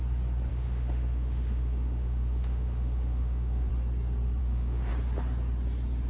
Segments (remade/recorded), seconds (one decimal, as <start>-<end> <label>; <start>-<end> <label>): 0.0-0.5 recorded; 0.5-3.7 remade; 3.7-4.4 recorded; 4.4-4.9 remade; 4.9-6.1 recorded